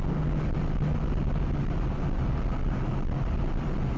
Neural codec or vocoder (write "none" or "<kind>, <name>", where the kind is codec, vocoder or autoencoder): none